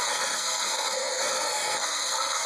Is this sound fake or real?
fake